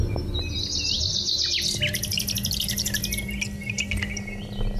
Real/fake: real